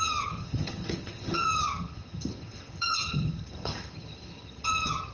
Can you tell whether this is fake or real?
fake